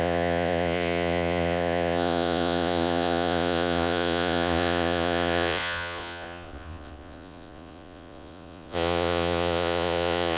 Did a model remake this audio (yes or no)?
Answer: yes